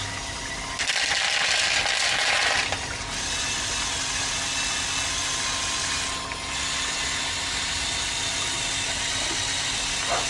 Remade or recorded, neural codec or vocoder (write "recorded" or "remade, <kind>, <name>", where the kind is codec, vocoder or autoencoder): recorded